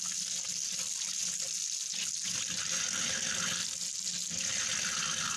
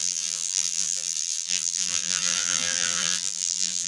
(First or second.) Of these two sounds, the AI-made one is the second